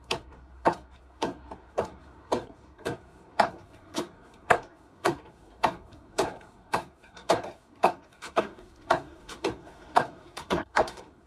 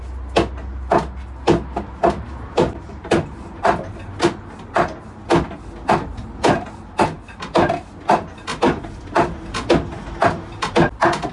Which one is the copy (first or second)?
first